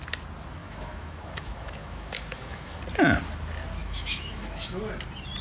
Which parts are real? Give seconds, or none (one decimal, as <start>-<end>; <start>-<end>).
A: 0.0-0.6; 2.8-3.8; 4.8-5.4